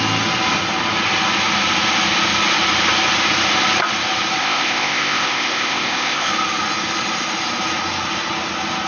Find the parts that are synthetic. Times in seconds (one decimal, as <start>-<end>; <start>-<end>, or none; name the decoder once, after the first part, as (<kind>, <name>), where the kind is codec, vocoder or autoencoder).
4.4-6.3 (codec, ZipCodec)